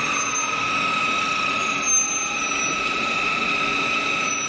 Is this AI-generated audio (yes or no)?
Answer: no